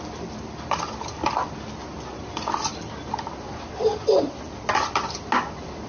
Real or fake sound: real